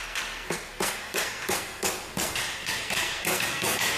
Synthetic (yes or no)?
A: yes